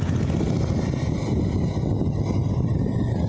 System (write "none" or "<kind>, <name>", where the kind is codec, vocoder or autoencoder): none